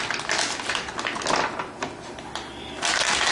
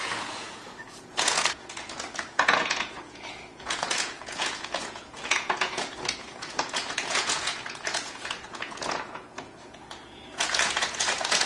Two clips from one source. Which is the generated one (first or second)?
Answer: second